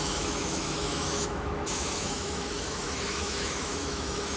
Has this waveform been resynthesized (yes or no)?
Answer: yes